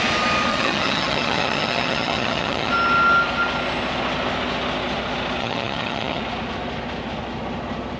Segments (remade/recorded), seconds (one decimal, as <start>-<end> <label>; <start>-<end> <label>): 0.0-0.5 recorded; 0.5-2.7 remade; 2.7-5.4 recorded; 5.4-6.2 remade; 6.2-8.0 recorded